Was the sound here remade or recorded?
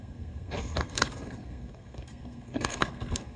remade